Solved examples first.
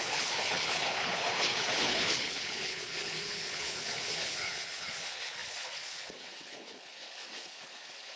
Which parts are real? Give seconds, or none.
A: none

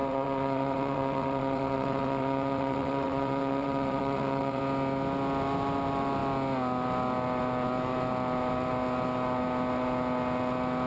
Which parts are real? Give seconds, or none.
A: 4.6-10.9

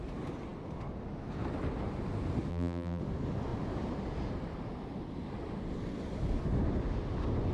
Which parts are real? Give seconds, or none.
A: 0.0-2.5; 3.0-7.5